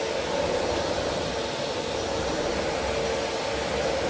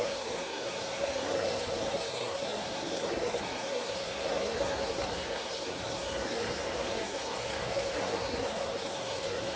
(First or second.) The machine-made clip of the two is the second